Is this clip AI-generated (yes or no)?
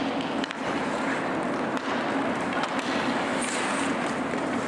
no